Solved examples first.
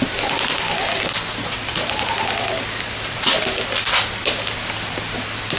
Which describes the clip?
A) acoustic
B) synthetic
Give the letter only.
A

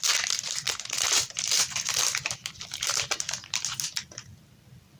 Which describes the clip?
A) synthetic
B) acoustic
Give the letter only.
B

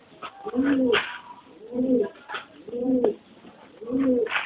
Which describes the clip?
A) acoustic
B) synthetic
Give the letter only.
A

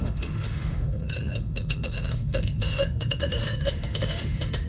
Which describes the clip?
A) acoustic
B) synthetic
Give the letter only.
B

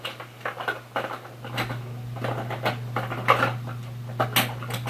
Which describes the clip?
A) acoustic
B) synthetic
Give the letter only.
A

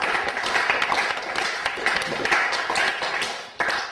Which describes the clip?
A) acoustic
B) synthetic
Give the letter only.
A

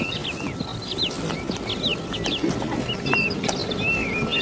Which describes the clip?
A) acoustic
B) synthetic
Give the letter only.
A